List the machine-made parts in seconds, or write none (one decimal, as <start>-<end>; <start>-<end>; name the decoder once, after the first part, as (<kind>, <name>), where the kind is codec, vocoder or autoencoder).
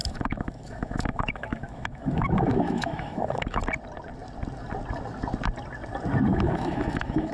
0.0-3.6 (autoencoder, DAC-VAE); 6.3-7.3